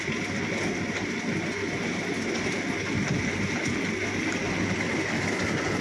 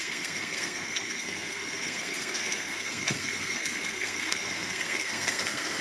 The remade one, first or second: second